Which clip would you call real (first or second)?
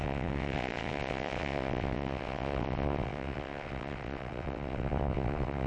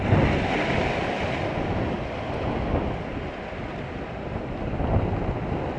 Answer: second